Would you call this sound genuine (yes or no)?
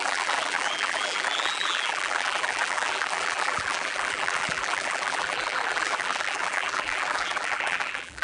no